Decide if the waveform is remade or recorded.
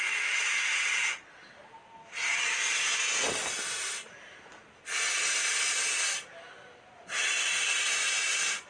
recorded